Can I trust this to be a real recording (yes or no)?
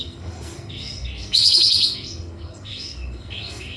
no